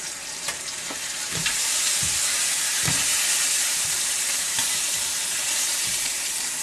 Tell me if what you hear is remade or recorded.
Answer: remade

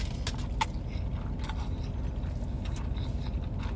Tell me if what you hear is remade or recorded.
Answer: recorded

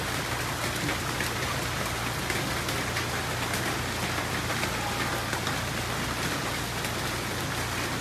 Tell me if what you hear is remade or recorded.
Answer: recorded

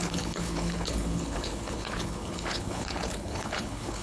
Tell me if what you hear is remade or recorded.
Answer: remade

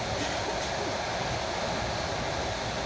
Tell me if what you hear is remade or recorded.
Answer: recorded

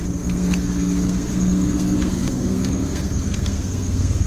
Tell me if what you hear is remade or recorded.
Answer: remade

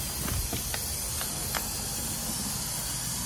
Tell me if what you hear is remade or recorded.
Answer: recorded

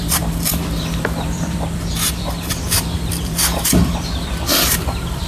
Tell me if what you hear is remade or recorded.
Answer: remade